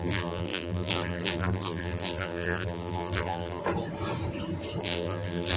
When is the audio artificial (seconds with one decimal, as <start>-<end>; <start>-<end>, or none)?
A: 0.0-3.6; 4.8-5.6